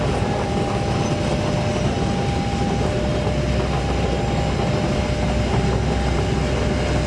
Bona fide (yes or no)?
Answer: yes